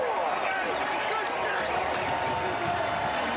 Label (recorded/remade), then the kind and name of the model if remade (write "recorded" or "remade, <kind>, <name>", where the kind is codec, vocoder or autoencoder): recorded